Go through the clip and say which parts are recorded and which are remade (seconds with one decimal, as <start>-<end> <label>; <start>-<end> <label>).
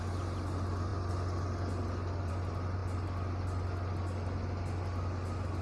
0.0-5.6 recorded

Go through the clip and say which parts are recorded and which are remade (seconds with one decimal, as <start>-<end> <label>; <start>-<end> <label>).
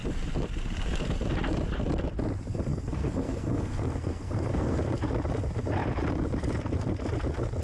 0.0-2.7 recorded; 2.7-4.8 remade; 4.8-7.6 recorded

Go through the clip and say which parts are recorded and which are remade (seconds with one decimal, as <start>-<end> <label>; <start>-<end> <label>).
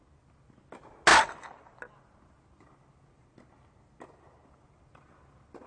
0.0-1.1 recorded; 1.1-1.8 remade; 1.8-5.7 recorded